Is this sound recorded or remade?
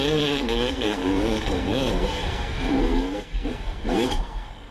remade